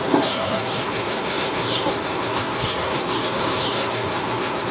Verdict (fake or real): fake